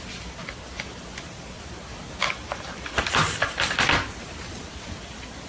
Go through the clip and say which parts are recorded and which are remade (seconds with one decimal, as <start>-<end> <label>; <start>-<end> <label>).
0.0-5.5 recorded